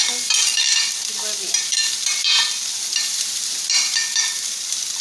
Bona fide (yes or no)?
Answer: no